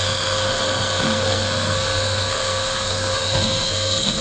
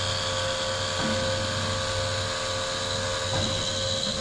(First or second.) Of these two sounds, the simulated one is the first